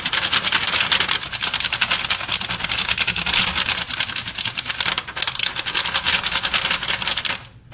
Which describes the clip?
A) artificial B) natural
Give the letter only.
B